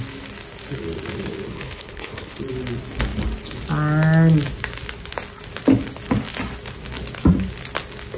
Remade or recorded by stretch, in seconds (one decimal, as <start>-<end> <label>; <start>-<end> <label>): 0.0-1.5 recorded; 1.5-2.4 remade; 2.4-8.2 recorded